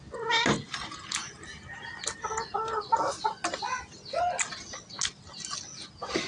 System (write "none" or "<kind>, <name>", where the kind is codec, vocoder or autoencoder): none